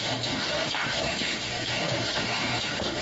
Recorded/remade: remade